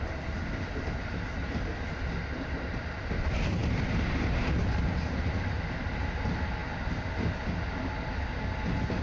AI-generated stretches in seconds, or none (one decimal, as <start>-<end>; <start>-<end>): none